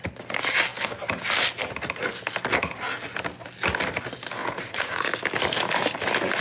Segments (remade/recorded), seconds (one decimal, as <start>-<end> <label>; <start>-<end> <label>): 0.0-4.4 recorded; 4.4-5.1 remade; 5.1-6.4 recorded

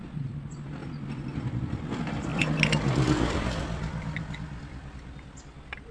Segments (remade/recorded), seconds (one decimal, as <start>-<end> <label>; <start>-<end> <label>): 0.0-5.9 recorded

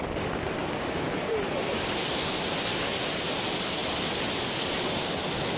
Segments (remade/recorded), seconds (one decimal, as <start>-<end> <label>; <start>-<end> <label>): 0.0-1.2 recorded; 1.2-2.3 remade; 2.3-5.6 recorded

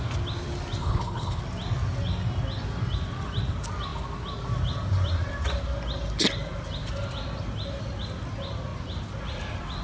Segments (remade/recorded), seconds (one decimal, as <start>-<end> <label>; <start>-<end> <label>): 0.0-0.8 recorded; 0.8-1.4 remade; 1.4-9.8 recorded

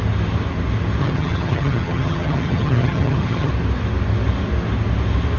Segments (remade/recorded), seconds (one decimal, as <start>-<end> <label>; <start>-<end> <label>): 0.0-1.0 recorded; 1.0-3.5 remade; 3.5-5.4 recorded

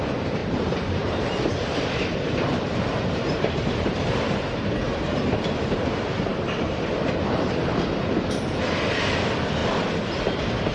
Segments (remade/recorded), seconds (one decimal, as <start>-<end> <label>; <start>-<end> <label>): 0.0-0.4 recorded; 0.4-5.1 remade; 5.1-6.3 recorded; 6.3-6.9 remade; 6.9-10.7 recorded